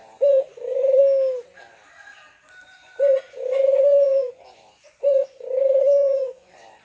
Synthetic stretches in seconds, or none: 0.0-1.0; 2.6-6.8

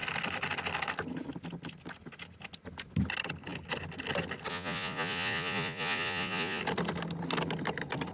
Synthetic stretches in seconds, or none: 4.5-6.6

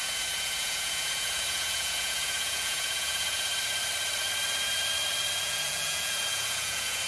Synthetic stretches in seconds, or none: 0.0-3.5; 5.4-7.1

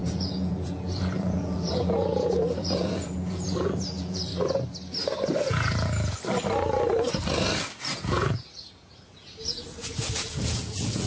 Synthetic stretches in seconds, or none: 0.0-4.3; 5.4-6.2; 7.9-11.1

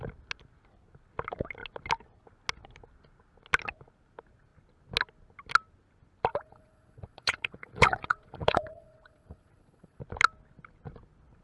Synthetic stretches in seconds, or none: 6.3-10.0

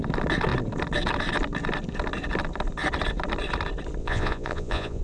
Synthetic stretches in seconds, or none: 4.0-5.0

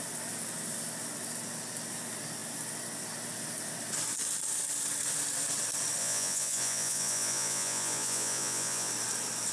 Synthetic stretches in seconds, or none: 6.0-8.9